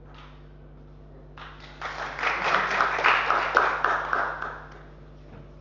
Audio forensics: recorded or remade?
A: recorded